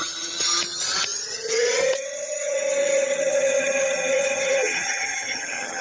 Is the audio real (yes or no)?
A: no